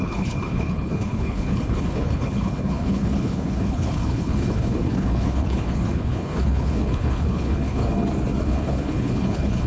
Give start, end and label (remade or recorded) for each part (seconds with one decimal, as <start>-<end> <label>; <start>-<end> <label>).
0.0-7.8 remade; 7.8-8.4 recorded; 8.4-9.7 remade